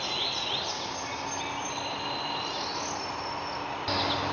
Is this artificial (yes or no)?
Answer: no